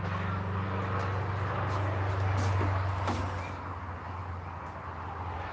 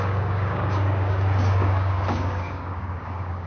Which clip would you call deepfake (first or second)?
second